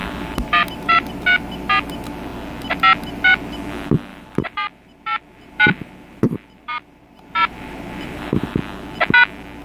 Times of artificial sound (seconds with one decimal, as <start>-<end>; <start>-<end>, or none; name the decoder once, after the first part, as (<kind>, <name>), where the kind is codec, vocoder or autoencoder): 0.0-1.1 (vocoder, BigVGAN v2); 4.1-8.6